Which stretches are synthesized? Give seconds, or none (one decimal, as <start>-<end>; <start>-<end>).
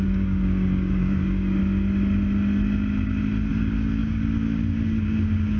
0.0-1.6; 3.5-5.6